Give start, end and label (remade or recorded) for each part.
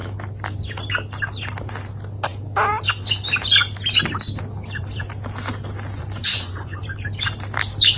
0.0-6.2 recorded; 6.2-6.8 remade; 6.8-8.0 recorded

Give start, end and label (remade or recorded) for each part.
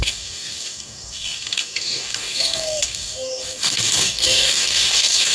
0.0-5.3 remade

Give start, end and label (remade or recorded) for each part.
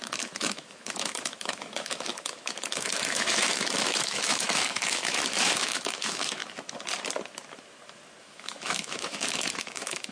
0.0-6.4 remade; 6.4-8.2 recorded; 8.2-10.1 remade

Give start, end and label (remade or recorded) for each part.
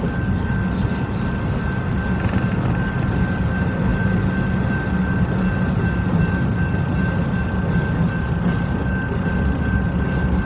0.0-10.5 recorded